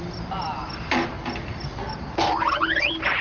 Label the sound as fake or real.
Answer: fake